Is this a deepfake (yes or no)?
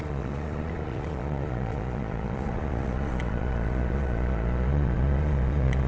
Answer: yes